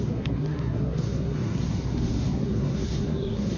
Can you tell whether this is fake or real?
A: fake